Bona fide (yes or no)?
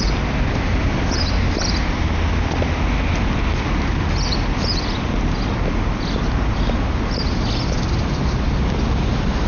yes